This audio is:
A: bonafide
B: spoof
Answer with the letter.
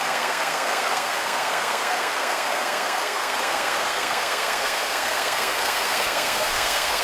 B